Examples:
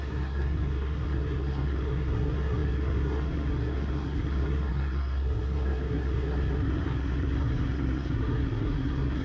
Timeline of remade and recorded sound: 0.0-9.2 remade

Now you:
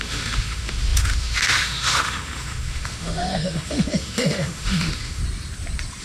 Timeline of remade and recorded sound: 0.0-5.2 remade; 5.2-6.0 recorded